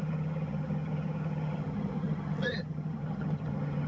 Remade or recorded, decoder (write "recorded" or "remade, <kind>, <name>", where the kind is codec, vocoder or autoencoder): remade, vocoder, HiFi-GAN